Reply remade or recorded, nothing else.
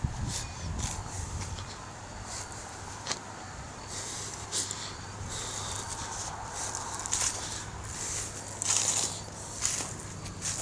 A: recorded